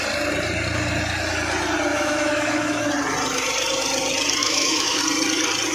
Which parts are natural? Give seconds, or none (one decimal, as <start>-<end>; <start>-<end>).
0.0-1.9; 2.9-4.4; 5.0-5.7